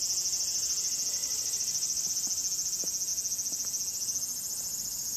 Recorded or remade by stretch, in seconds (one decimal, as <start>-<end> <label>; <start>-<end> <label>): 0.0-1.2 recorded; 1.2-2.1 remade; 2.1-5.2 recorded